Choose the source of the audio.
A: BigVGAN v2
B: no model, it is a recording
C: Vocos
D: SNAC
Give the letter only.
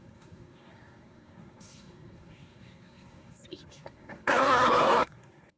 D